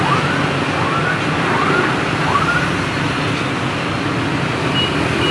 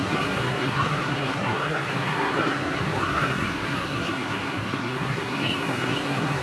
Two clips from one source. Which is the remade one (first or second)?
second